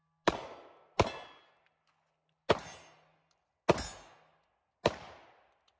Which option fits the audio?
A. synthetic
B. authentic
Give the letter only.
B